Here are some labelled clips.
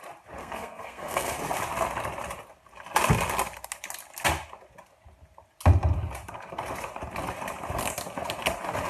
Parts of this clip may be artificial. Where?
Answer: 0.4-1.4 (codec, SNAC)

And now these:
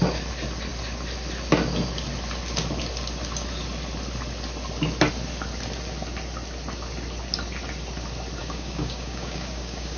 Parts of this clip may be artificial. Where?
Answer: 8.4-10.0 (codec, DAC)

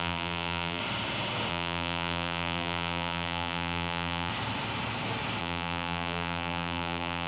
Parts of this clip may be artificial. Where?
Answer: 0.0-0.8 (vocoder, BigVGAN v2); 1.5-4.3; 5.4-7.3

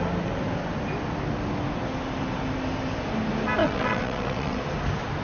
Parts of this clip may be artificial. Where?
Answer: 3.6-4.6 (vocoder, WaveNeXt)

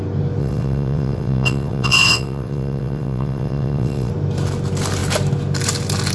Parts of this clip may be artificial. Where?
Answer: 0.4-4.1 (vocoder, WaveNeXt)